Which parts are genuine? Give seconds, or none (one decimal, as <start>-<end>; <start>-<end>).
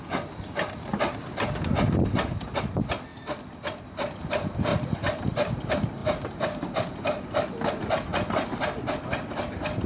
0.0-3.1; 3.9-4.7; 5.3-6.0; 7.7-9.9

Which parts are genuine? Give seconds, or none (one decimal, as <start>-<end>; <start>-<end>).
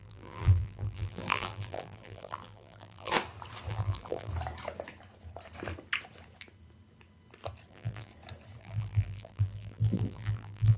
3.1-3.7; 4.3-7.7; 8.1-8.6